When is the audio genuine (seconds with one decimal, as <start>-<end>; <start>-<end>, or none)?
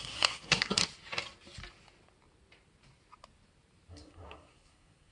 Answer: 0.8-3.9